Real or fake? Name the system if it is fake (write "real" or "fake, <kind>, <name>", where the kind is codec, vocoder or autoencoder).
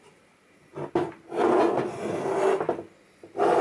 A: real